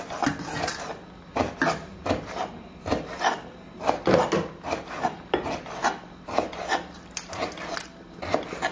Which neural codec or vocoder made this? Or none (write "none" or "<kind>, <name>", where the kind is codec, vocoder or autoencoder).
none